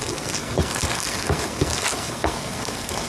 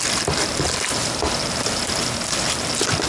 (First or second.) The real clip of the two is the second